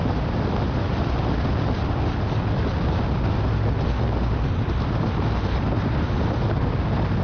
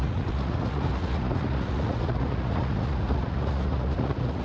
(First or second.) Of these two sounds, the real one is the first